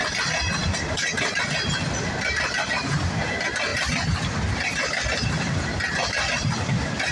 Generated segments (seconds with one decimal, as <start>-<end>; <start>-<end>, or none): none